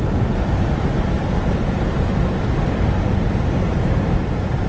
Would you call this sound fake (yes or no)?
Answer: no